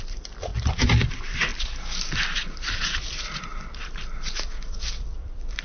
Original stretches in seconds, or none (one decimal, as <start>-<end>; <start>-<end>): 0.5-1.1; 1.5-4.9